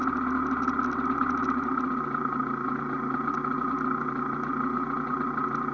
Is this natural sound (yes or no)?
yes